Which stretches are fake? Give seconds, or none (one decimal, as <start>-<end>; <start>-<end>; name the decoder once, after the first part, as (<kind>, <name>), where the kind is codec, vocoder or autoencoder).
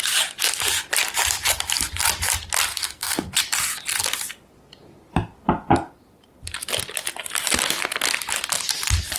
2.7-3.4 (codec, SNAC)